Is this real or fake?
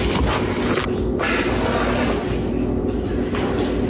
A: real